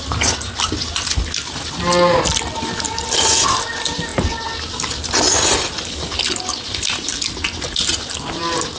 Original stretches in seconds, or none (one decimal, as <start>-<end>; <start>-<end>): 0.0-8.8